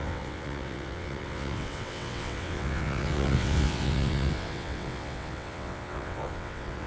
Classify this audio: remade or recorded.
remade